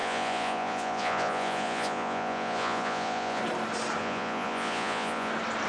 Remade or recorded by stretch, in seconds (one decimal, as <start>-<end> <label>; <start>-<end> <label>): 0.0-3.4 remade; 3.4-4.0 recorded; 4.0-5.3 remade; 5.3-5.7 recorded